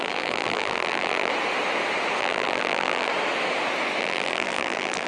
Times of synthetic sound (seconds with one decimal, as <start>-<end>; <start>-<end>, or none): 0.0-1.3; 2.2-3.1; 4.0-5.1

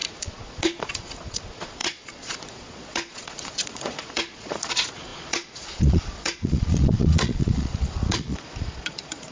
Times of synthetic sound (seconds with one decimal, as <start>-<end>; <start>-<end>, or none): 0.0-9.3

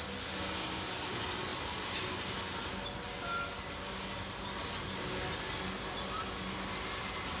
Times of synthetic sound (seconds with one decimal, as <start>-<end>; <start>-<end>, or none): none